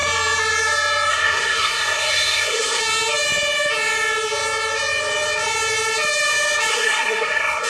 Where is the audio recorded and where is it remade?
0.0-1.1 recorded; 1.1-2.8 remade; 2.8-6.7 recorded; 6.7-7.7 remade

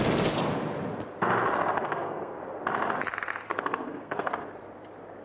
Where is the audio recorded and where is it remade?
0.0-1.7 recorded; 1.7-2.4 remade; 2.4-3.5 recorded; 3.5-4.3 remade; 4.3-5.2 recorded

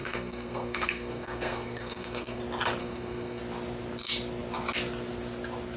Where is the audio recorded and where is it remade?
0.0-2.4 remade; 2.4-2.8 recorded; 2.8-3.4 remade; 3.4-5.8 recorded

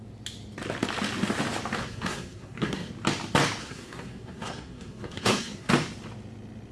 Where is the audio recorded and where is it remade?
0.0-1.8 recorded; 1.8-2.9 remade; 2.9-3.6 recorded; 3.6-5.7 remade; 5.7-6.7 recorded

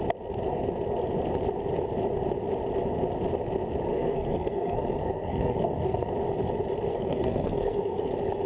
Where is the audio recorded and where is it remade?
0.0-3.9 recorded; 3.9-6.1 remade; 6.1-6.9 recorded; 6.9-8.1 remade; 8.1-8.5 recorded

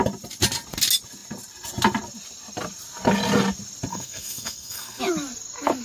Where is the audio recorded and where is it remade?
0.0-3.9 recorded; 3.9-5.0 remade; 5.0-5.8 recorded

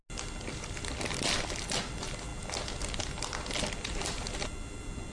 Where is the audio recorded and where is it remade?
0.0-5.1 recorded

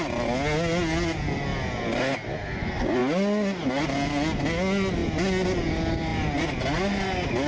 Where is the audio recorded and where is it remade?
0.0-7.5 recorded